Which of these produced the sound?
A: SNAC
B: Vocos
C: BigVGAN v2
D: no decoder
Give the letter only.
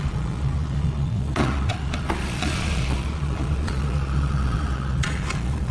B